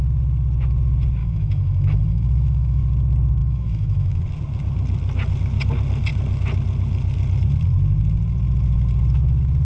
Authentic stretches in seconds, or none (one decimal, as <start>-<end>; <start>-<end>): 0.0-1.2; 2.8-3.4; 4.2-9.6